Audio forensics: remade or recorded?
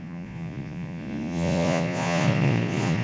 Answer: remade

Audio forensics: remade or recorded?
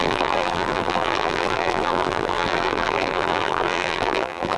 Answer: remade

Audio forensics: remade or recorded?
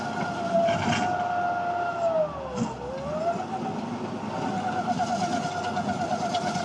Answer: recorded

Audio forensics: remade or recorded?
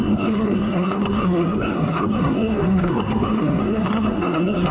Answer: remade